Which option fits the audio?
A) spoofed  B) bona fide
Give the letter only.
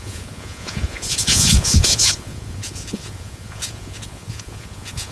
A